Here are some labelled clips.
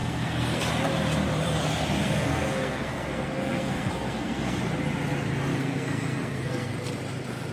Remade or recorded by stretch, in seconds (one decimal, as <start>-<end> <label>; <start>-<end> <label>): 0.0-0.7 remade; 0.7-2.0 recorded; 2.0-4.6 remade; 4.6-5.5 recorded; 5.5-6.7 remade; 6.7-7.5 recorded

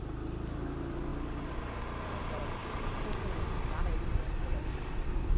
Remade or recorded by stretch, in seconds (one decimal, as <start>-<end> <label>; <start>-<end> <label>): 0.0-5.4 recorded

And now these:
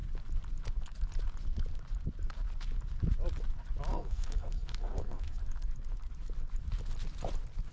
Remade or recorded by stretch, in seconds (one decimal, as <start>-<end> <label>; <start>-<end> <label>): 0.0-3.9 recorded; 3.9-5.4 remade; 5.4-7.7 recorded

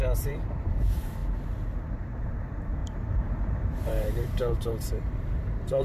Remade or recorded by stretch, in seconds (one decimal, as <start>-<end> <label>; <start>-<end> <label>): 0.0-1.2 remade; 1.2-2.2 recorded; 2.2-5.8 remade

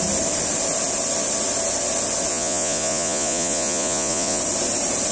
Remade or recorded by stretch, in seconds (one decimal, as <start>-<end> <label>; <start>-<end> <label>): 0.0-2.3 recorded; 2.3-4.4 remade; 4.4-5.1 recorded